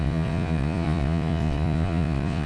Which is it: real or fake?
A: fake